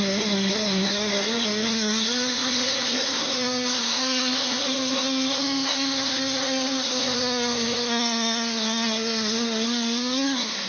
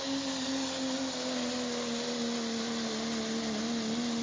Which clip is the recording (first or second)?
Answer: second